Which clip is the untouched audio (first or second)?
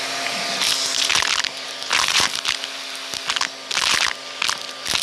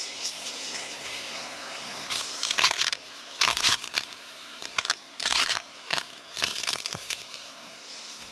first